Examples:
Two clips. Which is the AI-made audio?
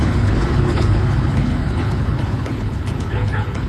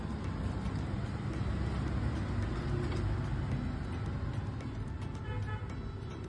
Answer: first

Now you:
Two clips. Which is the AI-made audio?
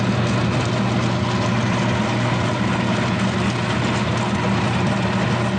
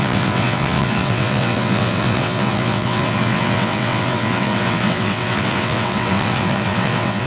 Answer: second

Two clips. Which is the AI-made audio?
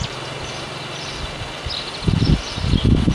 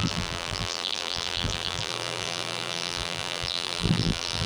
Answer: second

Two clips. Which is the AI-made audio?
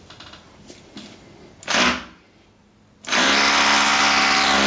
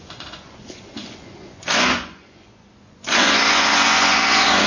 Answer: second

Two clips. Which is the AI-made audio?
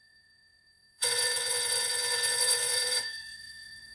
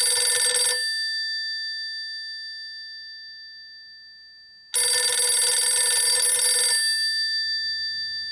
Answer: first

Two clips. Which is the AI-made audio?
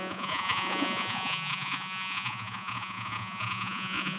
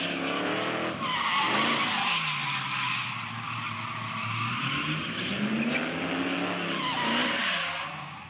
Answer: first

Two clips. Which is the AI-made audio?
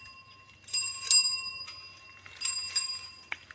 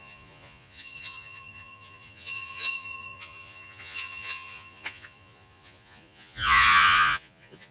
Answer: second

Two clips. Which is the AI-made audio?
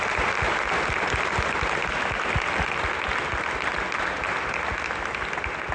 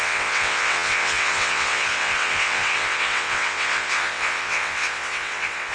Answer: second